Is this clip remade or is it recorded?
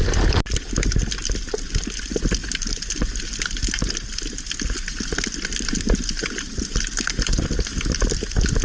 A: recorded